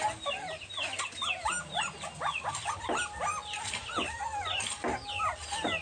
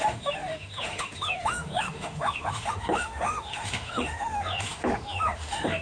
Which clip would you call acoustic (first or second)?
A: first